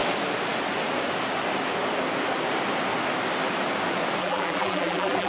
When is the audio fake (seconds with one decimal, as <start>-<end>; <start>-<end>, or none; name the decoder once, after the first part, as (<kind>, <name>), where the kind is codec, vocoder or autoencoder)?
4.2-5.3 (vocoder, BigVGAN v2)